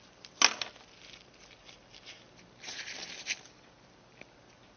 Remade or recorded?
recorded